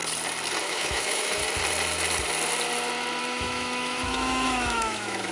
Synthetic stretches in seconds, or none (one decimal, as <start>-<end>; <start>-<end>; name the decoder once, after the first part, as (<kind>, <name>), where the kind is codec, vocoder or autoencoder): 0.6-1.4 (autoencoder, DAC-VAE); 3.2-5.3

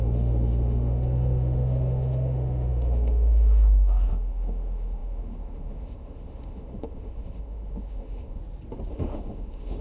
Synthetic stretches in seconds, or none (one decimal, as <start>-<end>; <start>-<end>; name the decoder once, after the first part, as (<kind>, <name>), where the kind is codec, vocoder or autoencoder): 0.0-8.4 (autoencoder, DAC-VAE); 8.9-9.8

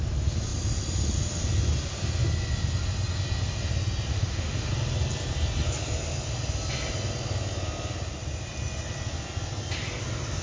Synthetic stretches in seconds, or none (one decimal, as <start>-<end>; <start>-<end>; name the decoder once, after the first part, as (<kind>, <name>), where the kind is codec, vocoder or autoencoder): 4.1-4.7 (autoencoder, DAC-VAE)

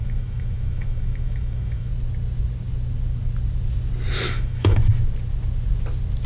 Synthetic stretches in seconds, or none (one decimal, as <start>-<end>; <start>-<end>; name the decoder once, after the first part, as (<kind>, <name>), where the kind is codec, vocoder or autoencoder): 0.0-1.9 (autoencoder, DAC-VAE); 4.3-4.8

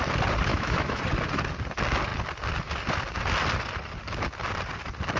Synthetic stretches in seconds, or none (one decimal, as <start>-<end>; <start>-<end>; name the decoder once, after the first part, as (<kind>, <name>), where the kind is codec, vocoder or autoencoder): 0.5-1.0 (autoencoder, DAC-VAE)